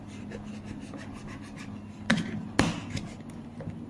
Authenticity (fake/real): real